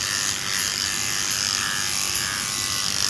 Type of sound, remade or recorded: recorded